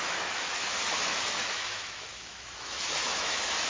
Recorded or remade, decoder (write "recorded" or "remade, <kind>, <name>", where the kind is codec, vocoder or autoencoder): remade, autoencoder, DAC-VAE